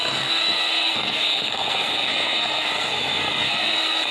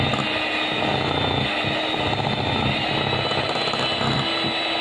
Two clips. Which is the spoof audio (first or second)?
first